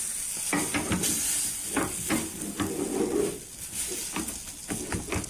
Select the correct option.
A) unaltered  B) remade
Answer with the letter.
A